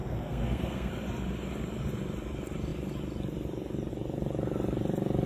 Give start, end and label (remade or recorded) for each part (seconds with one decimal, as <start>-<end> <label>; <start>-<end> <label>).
0.0-0.9 remade; 0.9-5.3 recorded